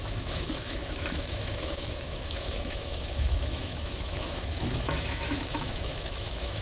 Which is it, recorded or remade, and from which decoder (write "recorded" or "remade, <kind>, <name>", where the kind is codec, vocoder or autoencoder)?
remade, autoencoder, DAC-VAE